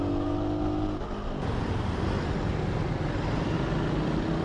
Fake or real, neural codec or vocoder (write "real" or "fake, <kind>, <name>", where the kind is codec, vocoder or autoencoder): real